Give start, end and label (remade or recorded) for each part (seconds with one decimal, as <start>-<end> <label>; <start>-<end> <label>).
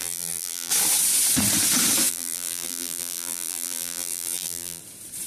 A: 0.0-0.7 remade; 0.7-2.1 recorded; 2.1-4.8 remade; 4.8-5.3 recorded